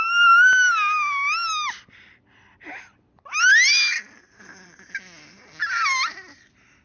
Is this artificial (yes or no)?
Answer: no